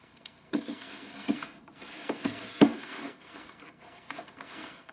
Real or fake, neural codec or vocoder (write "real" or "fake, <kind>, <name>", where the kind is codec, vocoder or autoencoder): fake, codec, SNAC